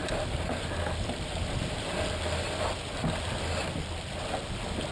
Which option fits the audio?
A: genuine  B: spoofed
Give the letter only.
A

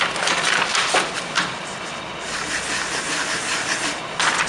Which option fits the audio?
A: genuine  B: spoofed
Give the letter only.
A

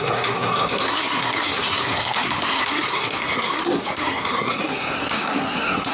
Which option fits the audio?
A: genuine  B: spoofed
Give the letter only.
B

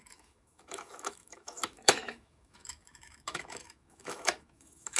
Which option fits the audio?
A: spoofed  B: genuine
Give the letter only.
A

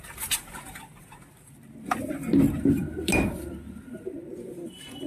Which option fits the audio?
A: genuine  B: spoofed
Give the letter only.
A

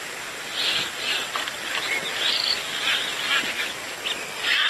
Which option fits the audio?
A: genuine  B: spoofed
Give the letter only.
A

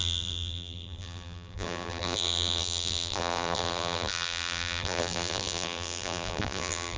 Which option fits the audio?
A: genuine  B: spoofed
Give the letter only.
B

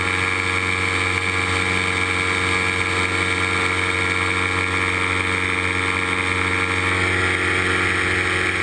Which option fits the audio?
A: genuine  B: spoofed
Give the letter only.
A